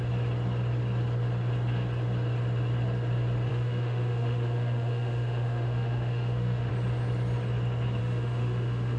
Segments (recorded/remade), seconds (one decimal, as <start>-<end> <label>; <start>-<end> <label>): 0.0-3.5 recorded; 3.5-6.7 remade; 6.7-8.0 recorded; 8.0-9.0 remade